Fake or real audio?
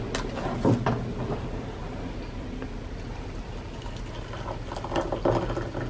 real